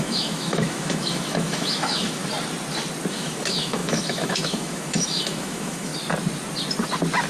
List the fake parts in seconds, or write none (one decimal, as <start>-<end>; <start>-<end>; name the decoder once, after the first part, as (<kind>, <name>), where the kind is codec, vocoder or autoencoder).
0.0-2.2 (autoencoder, DAC-VAE); 3.1-5.9